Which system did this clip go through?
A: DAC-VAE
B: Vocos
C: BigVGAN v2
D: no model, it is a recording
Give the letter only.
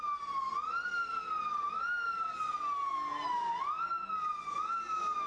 D